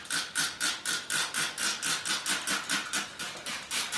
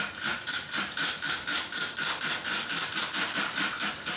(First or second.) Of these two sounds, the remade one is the second